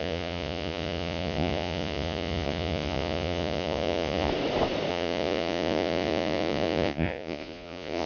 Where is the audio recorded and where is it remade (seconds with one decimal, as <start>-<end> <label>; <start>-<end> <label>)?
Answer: 0.0-4.3 remade; 4.3-4.9 recorded; 4.9-8.1 remade